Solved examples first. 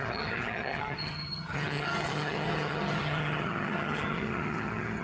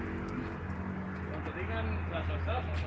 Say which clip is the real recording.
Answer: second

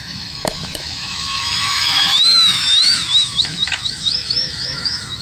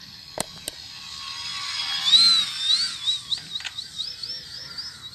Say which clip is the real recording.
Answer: second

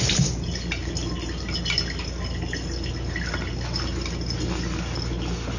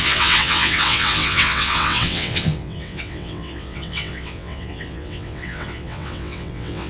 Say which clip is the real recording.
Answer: first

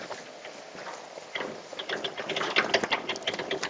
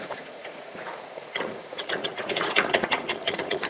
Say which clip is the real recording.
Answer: first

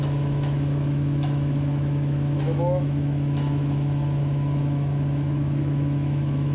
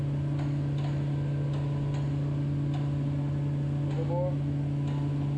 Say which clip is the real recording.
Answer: second